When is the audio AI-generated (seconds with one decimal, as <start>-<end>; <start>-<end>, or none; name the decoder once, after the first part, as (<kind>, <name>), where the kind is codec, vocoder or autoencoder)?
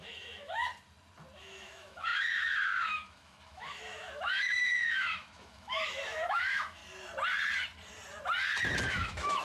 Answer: 0.0-0.6 (autoencoder, DAC-VAE); 1.4-6.8; 8.9-9.4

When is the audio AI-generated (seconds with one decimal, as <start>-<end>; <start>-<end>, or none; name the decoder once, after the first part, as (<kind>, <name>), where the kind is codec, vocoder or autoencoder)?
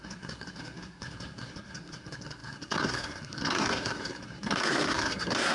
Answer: 0.0-5.5 (codec, SNAC)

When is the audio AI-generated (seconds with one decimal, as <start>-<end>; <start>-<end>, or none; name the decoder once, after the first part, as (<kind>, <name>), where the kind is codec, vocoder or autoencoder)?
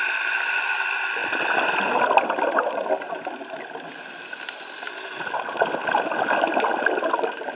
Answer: none